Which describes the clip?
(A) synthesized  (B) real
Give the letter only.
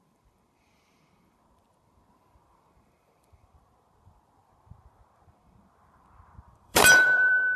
A